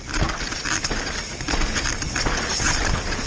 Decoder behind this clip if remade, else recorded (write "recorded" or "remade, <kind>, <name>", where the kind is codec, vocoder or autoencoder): recorded